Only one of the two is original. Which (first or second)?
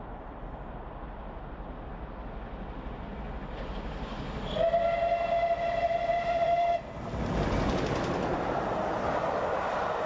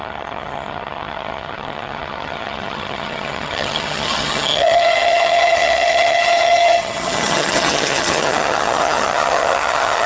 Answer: first